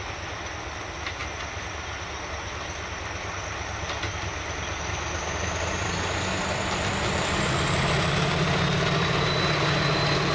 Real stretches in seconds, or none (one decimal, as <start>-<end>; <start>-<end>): 0.0-10.3